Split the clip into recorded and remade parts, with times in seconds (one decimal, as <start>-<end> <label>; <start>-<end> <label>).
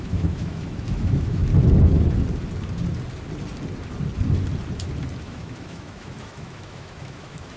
0.0-1.5 remade; 1.5-5.2 recorded; 5.2-7.6 remade